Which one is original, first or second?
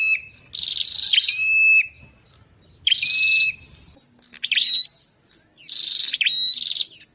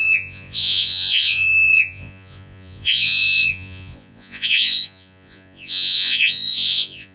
first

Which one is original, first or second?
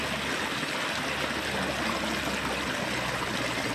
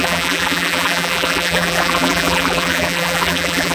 first